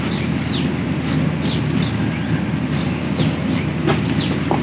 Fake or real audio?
real